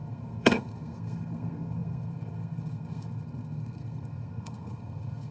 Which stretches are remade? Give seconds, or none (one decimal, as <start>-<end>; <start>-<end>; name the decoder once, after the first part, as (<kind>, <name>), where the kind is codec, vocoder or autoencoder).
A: 0.0-5.3 (codec, SNAC)